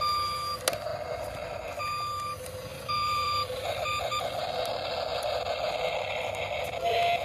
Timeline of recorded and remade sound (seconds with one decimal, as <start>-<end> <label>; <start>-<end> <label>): 0.0-0.9 recorded; 0.9-1.8 remade; 1.8-2.7 recorded; 2.7-4.9 remade; 4.9-7.2 recorded